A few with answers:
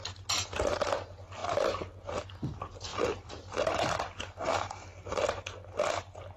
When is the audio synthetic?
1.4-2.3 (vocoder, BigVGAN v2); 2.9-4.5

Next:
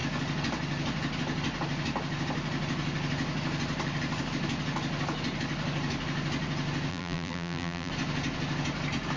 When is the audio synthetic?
6.9-7.9 (vocoder, BigVGAN v2)

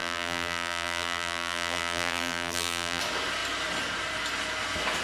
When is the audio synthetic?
0.0-3.0 (vocoder, BigVGAN v2)

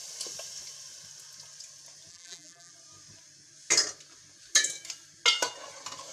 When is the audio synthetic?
2.1-2.7 (vocoder, BigVGAN v2)

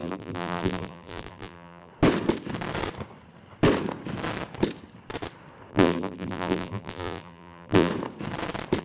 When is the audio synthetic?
0.0-1.9 (vocoder, BigVGAN v2); 5.7-7.9

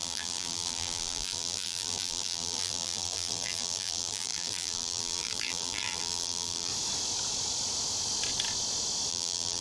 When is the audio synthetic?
0.0-6.7 (vocoder, BigVGAN v2); 9.1-9.6

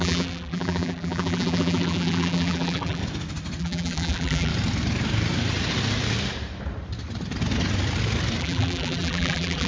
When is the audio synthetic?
0.0-3.0 (vocoder, BigVGAN v2); 3.6-4.5; 8.4-9.7

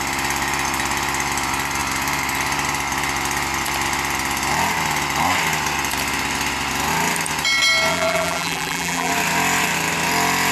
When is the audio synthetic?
7.9-9.1 (vocoder, BigVGAN v2)